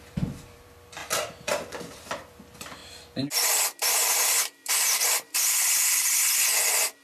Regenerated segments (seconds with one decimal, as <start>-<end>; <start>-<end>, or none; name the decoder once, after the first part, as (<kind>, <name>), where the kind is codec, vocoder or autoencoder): 0.0-2.8 (vocoder, BigVGAN v2); 3.8-7.0